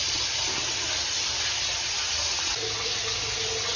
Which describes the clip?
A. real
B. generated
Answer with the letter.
A